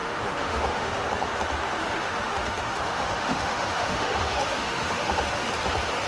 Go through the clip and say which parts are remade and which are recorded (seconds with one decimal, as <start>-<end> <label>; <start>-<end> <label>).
0.0-0.9 remade; 0.9-1.8 recorded; 1.8-5.5 remade; 5.5-6.1 recorded